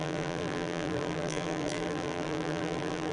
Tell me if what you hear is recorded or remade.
remade